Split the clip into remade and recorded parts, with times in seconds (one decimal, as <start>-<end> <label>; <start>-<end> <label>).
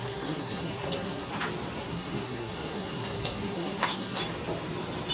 0.0-1.3 remade; 1.3-1.8 recorded; 1.8-4.2 remade; 4.2-5.1 recorded